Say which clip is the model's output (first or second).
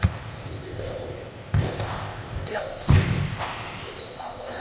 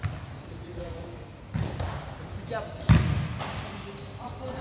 first